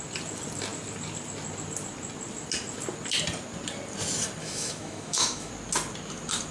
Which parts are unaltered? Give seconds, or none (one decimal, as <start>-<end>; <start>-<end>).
0.0-4.4; 5.5-6.5